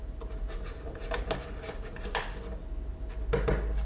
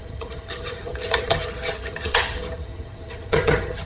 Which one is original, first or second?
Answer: first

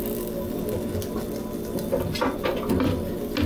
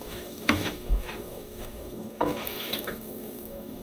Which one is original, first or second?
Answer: first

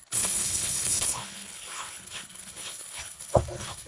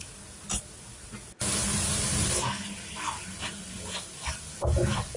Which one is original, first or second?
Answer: second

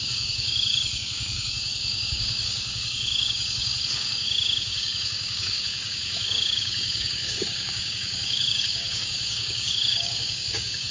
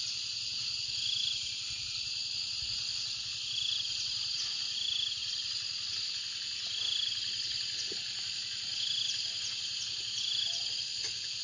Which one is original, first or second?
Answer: second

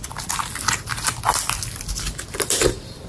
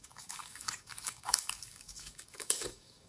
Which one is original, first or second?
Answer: first